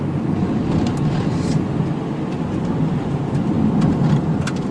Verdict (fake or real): real